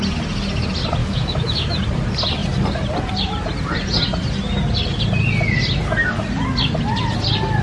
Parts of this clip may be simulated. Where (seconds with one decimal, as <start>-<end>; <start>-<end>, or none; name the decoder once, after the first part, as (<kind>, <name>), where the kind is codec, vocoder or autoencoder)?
1.0-1.8 (autoencoder, DAC-VAE)